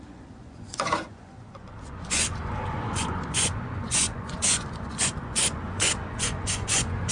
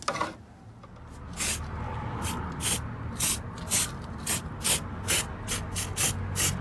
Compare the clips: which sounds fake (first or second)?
first